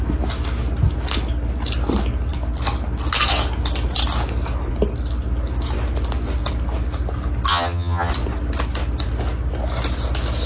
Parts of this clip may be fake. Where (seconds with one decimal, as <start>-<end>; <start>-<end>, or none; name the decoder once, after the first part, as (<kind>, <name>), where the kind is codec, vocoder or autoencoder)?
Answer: 7.5-8.1 (vocoder, HiFi-GAN)